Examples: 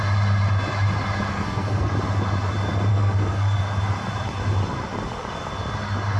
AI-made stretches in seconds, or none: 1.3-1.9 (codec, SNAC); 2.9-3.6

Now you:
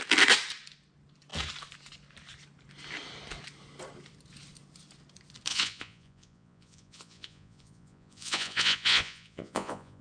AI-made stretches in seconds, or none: 5.5-10.0 (vocoder, Vocos)

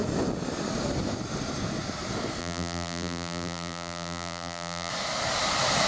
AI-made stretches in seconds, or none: 2.4-4.9 (vocoder, BigVGAN v2)

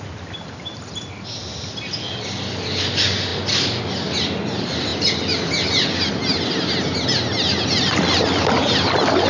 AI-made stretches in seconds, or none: none

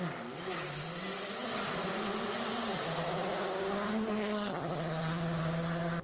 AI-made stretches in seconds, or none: none

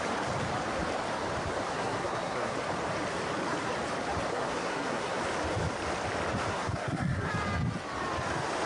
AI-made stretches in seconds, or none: 1.7-2.5 (codec, SNAC); 4.3-5.2; 6.5-7.3